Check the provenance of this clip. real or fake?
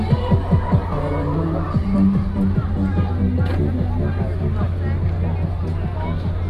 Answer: real